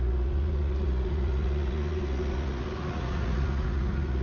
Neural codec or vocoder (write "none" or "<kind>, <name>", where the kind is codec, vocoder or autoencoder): vocoder, Vocos